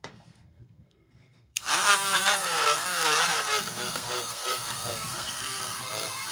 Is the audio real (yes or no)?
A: no